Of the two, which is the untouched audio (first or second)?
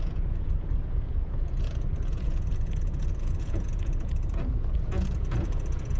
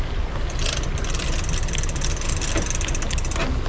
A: second